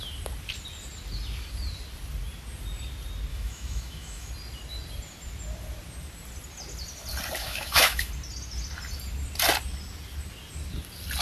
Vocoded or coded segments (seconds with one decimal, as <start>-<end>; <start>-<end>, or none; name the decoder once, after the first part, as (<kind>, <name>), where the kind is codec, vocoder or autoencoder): 3.3-4.3 (autoencoder, DAC-VAE); 7.4-8.1